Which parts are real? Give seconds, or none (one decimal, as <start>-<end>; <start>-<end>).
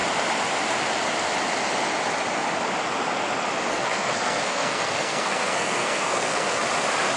0.0-3.7; 6.6-7.2